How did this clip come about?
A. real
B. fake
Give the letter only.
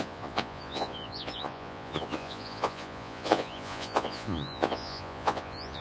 B